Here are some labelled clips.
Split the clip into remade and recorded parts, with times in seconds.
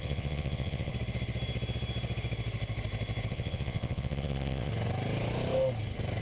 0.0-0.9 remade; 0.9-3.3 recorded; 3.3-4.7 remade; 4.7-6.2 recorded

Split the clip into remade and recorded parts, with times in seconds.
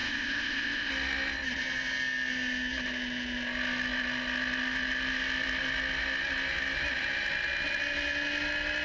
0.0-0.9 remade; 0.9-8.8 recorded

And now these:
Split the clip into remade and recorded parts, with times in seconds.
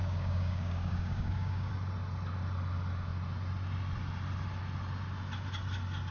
0.0-1.7 remade; 1.7-6.1 recorded